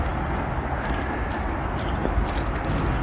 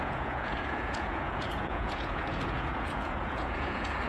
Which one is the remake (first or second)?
second